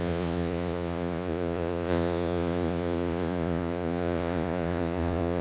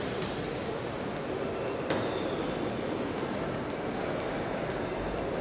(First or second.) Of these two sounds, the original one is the second